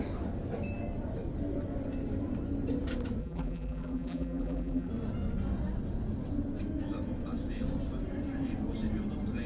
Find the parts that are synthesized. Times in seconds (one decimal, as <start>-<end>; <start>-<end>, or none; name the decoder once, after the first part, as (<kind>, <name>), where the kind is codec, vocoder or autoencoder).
3.2-4.9 (vocoder, BigVGAN v2)